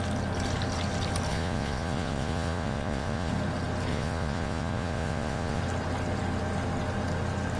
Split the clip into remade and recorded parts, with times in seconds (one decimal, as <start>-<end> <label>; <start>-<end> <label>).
0.0-1.3 recorded; 1.3-3.3 remade; 3.3-3.9 recorded; 3.9-5.6 remade; 5.6-7.6 recorded